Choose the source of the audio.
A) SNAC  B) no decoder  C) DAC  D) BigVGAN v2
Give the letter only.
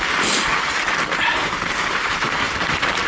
B